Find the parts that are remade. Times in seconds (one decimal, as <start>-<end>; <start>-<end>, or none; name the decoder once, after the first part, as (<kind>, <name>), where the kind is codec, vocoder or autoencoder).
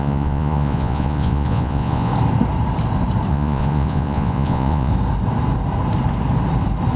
0.0-2.1 (vocoder, Vocos); 3.3-4.9